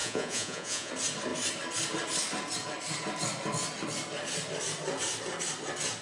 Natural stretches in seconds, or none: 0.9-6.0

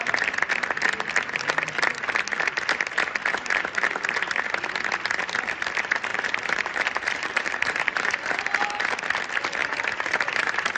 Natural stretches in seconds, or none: 0.0-6.1; 9.0-9.6

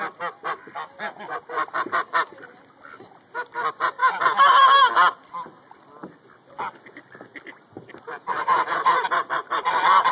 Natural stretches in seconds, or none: none

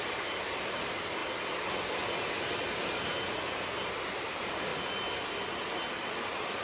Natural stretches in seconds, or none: 1.2-3.5; 4.7-5.9

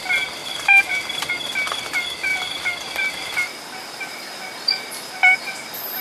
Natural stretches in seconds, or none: 0.0-0.4; 1.3-2.3

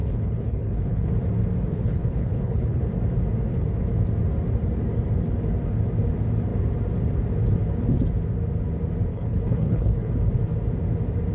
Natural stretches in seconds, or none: 1.1-1.7; 2.8-9.1; 10.1-11.3

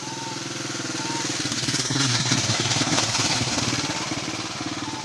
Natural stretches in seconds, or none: 0.0-1.5; 3.6-5.0